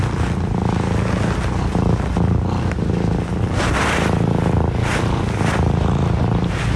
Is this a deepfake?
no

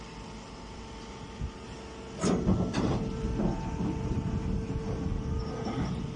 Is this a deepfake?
no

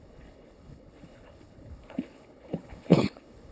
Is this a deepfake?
yes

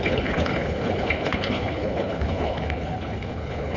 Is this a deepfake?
yes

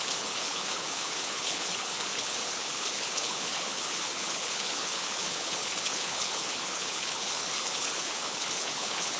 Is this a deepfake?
yes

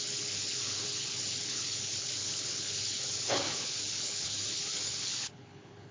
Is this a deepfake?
yes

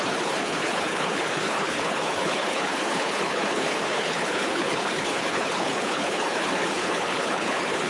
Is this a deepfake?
yes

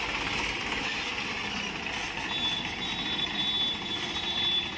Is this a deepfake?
no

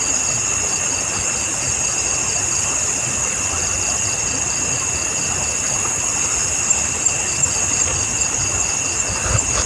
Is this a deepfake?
no